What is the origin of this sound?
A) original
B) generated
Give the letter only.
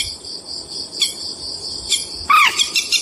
A